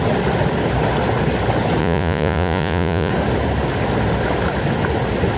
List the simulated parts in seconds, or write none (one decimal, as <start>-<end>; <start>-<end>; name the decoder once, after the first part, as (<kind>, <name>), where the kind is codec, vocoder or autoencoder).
1.8-3.1 (vocoder, Vocos)